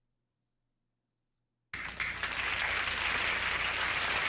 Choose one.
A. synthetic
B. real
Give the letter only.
B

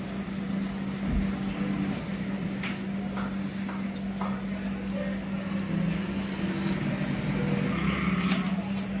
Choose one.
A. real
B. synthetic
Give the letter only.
A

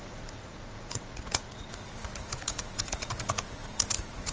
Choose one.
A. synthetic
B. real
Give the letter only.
A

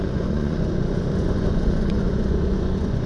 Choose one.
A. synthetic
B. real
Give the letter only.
A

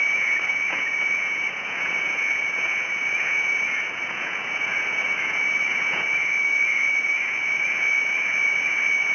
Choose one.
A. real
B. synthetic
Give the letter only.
B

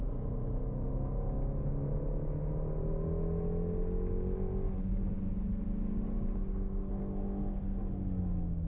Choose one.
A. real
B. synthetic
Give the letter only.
A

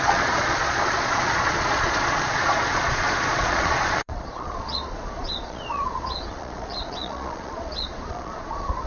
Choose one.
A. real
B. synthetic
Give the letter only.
B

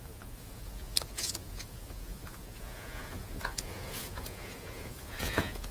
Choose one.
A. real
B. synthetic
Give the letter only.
B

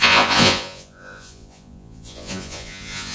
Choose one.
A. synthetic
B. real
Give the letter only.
A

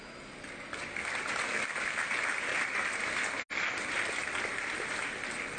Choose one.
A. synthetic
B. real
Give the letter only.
B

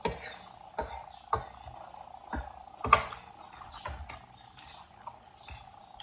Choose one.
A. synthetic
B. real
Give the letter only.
B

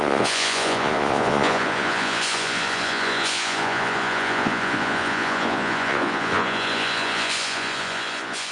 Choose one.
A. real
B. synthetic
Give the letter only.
B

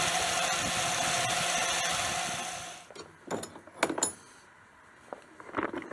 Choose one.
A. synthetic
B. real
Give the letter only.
B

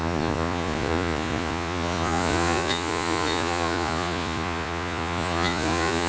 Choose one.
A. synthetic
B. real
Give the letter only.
A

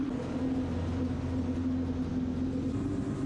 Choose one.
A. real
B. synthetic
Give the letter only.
A